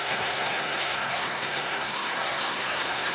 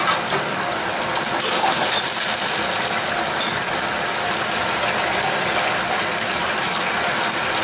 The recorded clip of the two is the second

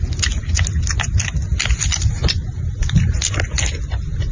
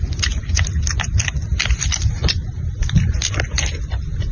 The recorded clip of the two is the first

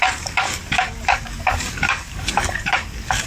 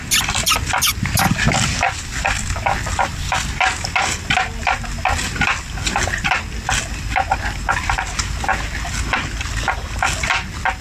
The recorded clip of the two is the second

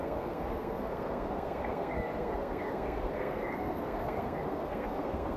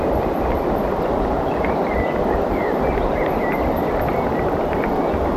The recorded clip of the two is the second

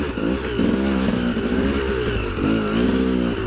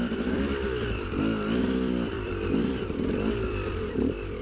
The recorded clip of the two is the first